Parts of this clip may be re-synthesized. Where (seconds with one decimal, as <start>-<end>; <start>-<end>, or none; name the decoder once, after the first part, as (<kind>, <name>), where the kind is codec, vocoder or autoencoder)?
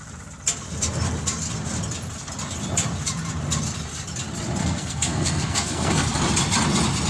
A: 4.6-6.0 (codec, SNAC)